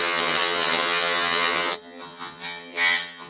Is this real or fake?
fake